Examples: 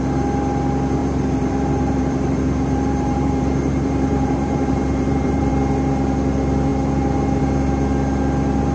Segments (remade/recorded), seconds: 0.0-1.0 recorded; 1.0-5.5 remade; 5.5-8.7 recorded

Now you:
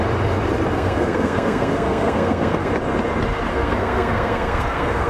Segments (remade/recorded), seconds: 0.0-0.7 recorded; 0.7-2.7 remade; 2.7-3.5 recorded; 3.5-5.1 remade

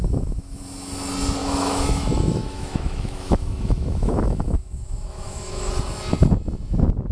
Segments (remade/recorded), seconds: 0.0-0.6 remade; 0.6-1.4 recorded; 1.4-5.7 remade; 5.7-7.1 recorded